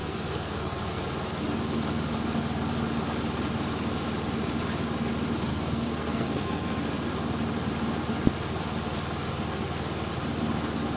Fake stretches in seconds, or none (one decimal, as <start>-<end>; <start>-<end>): 0.0-1.0; 5.5-6.8